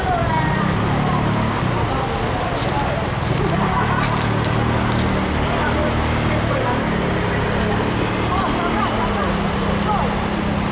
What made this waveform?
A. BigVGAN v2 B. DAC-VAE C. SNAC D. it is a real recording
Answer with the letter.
D